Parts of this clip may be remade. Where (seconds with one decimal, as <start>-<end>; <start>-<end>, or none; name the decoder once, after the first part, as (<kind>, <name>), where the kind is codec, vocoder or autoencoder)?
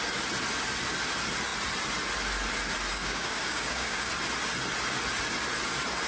2.9-4.1 (codec, DAC)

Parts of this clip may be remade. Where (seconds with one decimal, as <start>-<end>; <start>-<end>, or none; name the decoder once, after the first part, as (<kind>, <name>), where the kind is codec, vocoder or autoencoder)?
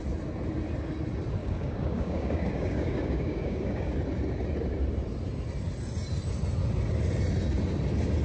1.4-3.9 (codec, DAC)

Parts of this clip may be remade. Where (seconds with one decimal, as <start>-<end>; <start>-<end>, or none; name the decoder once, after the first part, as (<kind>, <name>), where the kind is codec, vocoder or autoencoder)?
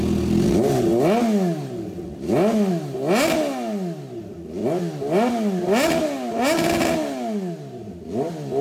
none